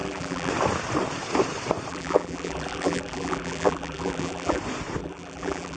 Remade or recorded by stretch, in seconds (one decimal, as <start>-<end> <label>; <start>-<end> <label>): 0.0-0.5 remade; 0.5-1.9 recorded; 1.9-4.6 remade; 4.6-5.0 recorded; 5.0-5.8 remade